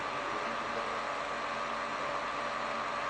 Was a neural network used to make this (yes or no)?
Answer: no